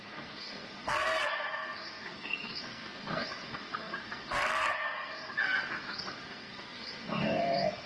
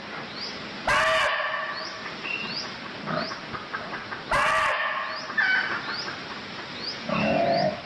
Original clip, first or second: second